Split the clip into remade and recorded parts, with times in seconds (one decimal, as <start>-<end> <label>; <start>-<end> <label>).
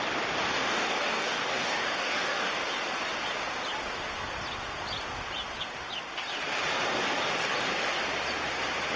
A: 0.0-0.5 recorded; 0.5-2.5 remade; 2.5-9.0 recorded